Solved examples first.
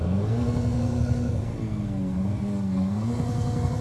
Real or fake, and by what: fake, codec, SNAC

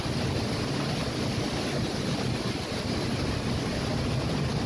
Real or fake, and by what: real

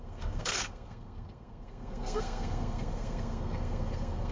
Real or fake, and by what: fake, codec, SNAC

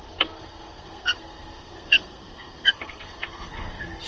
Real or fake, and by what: fake, codec, SNAC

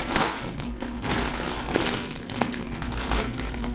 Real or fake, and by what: fake, codec, SNAC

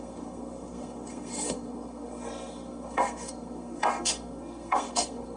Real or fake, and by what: fake, codec, SNAC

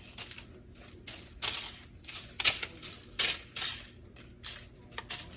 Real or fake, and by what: real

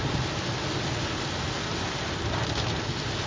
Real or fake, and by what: real